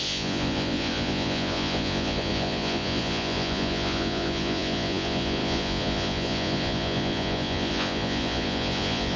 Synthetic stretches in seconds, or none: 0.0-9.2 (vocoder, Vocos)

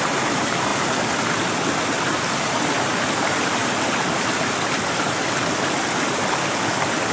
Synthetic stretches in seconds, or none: none